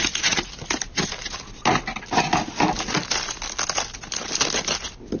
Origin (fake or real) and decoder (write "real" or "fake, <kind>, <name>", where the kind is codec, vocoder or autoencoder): real